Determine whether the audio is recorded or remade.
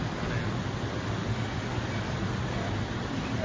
recorded